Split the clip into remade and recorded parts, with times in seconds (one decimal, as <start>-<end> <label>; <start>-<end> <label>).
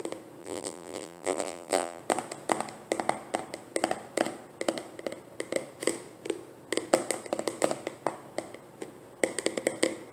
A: 0.0-0.4 recorded; 0.4-2.0 remade; 2.0-10.1 recorded